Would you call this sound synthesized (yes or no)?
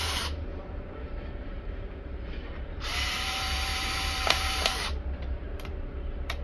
yes